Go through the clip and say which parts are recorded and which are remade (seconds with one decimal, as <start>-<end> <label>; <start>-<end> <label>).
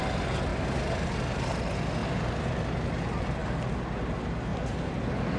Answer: 0.0-0.5 recorded; 0.5-1.1 remade; 1.1-5.4 recorded